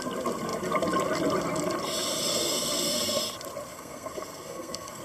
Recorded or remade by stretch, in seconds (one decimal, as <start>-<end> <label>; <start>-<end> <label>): 0.0-2.3 recorded; 2.3-3.2 remade; 3.2-3.7 recorded; 3.7-5.0 remade